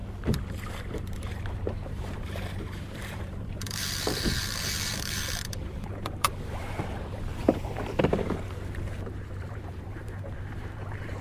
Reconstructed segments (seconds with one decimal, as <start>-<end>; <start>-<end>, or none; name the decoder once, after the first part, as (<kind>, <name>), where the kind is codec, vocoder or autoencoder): 0.8-11.2 (vocoder, BigVGAN v2)